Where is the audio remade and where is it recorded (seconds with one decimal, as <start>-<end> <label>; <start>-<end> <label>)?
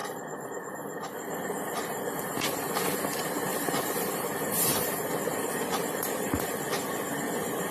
0.0-3.0 remade; 3.0-3.5 recorded; 3.5-5.1 remade; 5.1-7.7 recorded